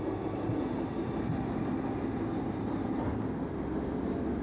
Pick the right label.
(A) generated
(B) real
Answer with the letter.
B